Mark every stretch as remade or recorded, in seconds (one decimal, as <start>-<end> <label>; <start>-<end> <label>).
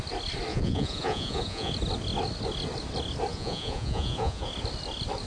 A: 0.0-0.5 recorded; 0.5-1.7 remade; 1.7-3.3 recorded; 3.3-4.5 remade; 4.5-5.3 recorded